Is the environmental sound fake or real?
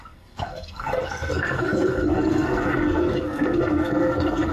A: fake